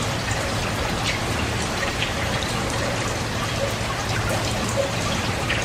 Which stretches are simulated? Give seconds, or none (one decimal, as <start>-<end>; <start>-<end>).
0.0-0.6; 1.2-4.0; 4.6-5.6